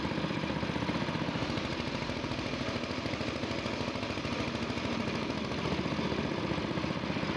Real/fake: real